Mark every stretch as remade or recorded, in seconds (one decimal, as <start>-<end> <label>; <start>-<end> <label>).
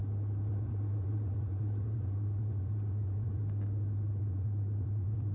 0.0-0.5 recorded; 0.5-3.4 remade; 3.4-4.2 recorded; 4.2-5.3 remade